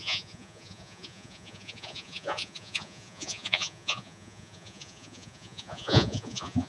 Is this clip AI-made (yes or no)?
yes